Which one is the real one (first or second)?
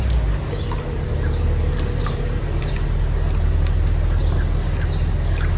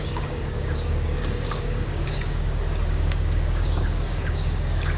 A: first